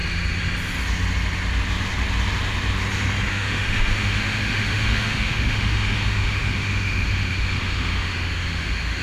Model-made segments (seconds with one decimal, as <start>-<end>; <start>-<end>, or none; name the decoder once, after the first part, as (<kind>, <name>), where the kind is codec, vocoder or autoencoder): 3.3-9.0 (autoencoder, DAC-VAE)

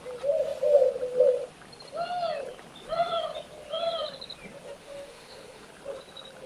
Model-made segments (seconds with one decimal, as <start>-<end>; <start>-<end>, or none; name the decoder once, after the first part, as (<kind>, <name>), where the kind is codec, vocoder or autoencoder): 4.8-5.7 (autoencoder, DAC-VAE)

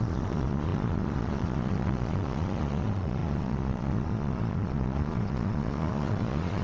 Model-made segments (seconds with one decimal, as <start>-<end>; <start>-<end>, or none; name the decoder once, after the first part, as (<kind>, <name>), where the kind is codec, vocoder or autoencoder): 0.0-6.6 (vocoder, Vocos)

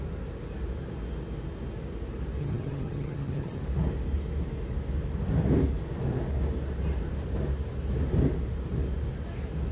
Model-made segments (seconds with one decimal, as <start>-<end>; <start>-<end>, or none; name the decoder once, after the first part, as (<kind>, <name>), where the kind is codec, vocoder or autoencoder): 2.4-3.6 (vocoder, HiFi-GAN)